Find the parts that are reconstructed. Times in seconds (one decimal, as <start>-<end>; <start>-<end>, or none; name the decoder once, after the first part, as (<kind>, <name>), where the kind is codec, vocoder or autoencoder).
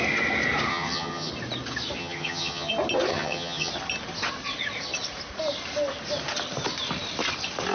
0.7-1.3 (vocoder, HiFi-GAN); 2.0-2.7; 3.1-3.7